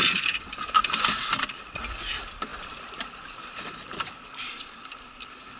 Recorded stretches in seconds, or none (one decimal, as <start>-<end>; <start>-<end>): none